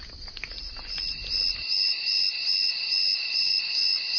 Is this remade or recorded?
recorded